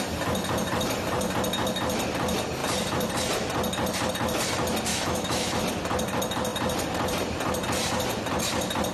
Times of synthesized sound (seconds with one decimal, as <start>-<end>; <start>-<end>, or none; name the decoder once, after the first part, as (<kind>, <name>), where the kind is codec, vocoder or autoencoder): 4.9-5.6 (autoencoder, DAC-VAE)

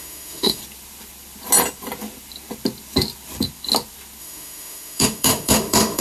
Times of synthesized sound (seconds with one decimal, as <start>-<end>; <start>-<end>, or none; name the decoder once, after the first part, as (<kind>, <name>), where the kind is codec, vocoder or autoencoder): 0.0-0.6 (autoencoder, DAC-VAE); 4.2-6.0

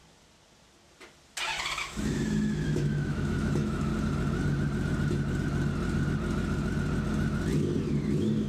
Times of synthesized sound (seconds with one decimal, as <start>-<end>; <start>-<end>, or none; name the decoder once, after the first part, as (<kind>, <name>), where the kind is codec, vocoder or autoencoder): 1.8-3.9 (autoencoder, DAC-VAE)

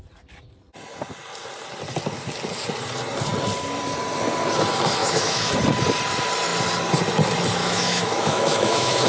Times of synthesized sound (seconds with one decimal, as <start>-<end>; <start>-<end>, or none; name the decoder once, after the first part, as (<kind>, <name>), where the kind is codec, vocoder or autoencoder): 5.0-5.5 (autoencoder, DAC-VAE); 7.6-9.1

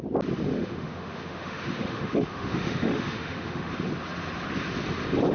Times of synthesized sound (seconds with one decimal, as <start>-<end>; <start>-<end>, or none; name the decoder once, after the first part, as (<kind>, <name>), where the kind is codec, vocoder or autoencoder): 0.5-3.7 (autoencoder, DAC-VAE)